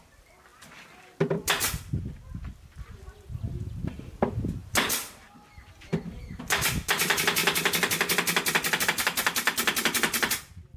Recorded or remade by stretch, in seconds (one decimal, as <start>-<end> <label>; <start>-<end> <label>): 0.0-7.4 remade; 7.4-8.8 recorded; 8.8-10.8 remade